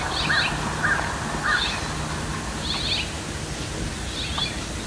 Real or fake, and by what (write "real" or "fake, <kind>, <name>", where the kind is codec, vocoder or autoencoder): real